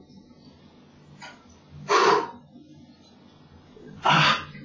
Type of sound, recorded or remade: recorded